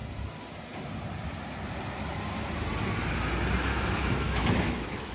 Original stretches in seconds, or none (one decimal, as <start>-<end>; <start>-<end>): 0.0-3.7